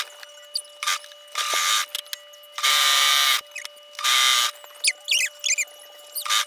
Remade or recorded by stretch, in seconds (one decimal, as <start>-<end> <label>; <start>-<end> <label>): 0.0-6.5 recorded